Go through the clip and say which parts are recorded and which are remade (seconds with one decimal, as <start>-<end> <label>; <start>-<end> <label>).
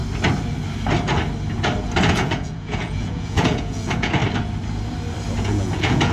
0.0-2.0 recorded; 2.0-4.2 remade; 4.2-5.4 recorded; 5.4-6.1 remade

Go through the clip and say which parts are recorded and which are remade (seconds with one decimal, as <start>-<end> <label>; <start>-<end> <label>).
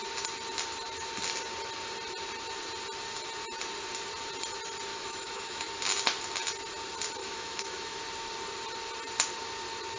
0.0-4.9 recorded; 4.9-5.7 remade; 5.7-7.2 recorded; 7.2-8.0 remade; 8.0-10.0 recorded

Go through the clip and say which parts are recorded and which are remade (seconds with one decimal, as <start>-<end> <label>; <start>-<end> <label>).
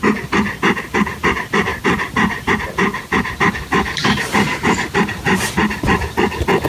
0.0-1.7 recorded; 1.7-2.5 remade; 2.5-4.0 recorded; 4.0-4.8 remade; 4.8-6.7 recorded